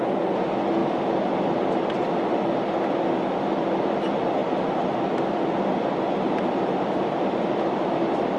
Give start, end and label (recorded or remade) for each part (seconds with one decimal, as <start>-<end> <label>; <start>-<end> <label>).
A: 0.0-8.4 recorded